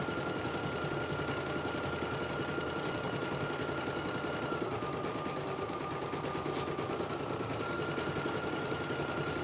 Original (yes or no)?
yes